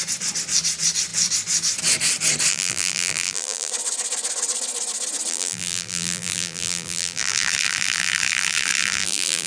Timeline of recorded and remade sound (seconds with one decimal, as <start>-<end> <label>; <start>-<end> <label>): 0.0-2.5 recorded; 2.5-3.7 remade; 3.7-5.3 recorded; 5.3-9.5 remade